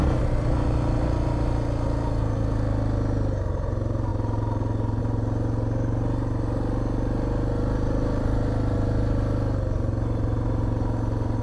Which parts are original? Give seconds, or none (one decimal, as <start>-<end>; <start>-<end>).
0.0-11.4